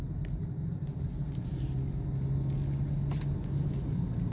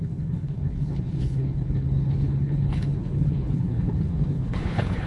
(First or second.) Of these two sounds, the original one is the first